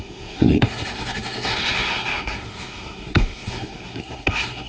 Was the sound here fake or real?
fake